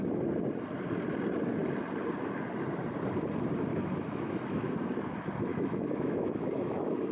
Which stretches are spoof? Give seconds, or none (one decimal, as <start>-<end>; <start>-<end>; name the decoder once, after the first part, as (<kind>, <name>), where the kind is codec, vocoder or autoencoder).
3.7-4.7 (autoencoder, DAC-VAE); 5.5-7.1